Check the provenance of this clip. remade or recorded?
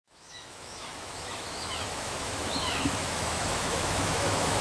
remade